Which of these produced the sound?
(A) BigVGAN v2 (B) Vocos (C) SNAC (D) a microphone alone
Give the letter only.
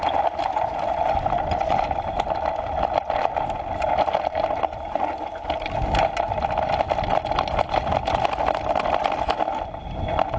D